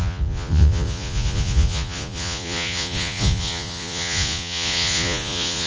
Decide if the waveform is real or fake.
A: fake